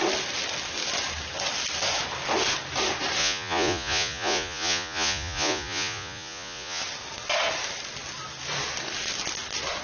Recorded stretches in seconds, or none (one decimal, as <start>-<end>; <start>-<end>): 0.0-3.2; 6.8-9.8